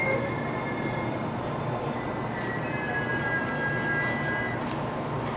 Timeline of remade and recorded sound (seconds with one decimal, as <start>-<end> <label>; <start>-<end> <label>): 0.0-5.4 recorded